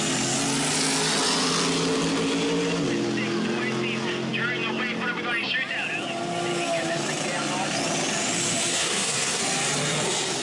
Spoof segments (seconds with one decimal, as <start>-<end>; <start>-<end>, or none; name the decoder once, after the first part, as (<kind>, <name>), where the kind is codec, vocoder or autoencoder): 8.7-9.4 (codec, SNAC)